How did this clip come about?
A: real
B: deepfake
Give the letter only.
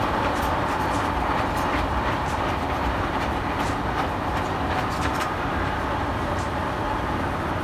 B